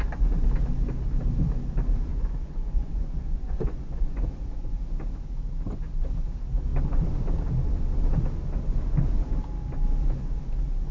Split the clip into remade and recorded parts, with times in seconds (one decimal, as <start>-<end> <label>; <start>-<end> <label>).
0.0-2.1 recorded; 2.1-4.8 remade; 4.8-10.9 recorded